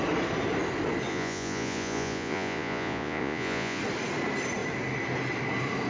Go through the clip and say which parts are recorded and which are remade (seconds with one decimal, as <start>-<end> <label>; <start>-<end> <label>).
0.0-1.1 recorded; 1.1-3.8 remade; 3.8-5.9 recorded